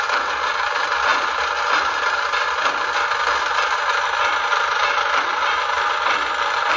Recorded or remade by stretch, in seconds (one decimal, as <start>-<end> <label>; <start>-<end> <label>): 0.0-6.8 recorded

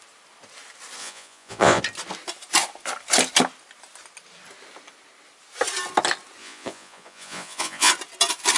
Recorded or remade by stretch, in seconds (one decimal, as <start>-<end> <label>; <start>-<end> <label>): 0.0-1.0 recorded; 1.0-1.8 remade; 1.8-6.4 recorded; 6.4-7.9 remade; 7.9-8.6 recorded